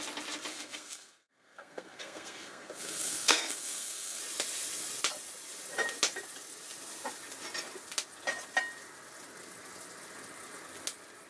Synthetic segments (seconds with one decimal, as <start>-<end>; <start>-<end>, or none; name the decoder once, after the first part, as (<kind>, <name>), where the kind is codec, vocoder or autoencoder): 0.5-4.2 (codec, SNAC)